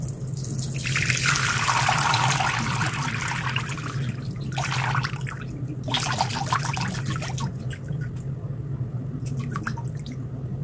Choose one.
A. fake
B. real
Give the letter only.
B